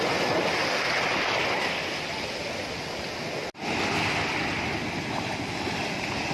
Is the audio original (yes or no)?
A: yes